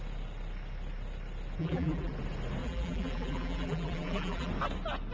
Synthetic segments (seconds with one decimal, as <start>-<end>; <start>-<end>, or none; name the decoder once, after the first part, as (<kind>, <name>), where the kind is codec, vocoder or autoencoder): 1.6-2.1 (vocoder, BigVGAN v2); 2.6-4.5